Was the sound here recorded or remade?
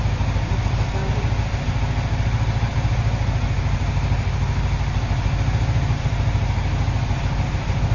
recorded